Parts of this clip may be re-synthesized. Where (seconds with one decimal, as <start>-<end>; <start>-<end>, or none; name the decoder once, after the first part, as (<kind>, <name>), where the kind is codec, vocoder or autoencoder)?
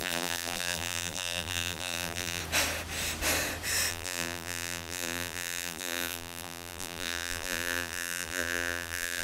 0.0-2.4 (vocoder, BigVGAN v2); 3.9-9.2